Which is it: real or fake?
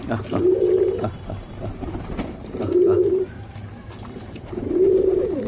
fake